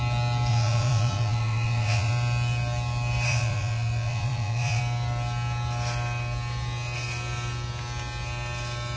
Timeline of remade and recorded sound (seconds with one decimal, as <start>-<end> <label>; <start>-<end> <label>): 0.0-0.5 recorded; 0.5-2.1 remade; 2.1-3.3 recorded; 3.3-4.8 remade; 4.8-9.0 recorded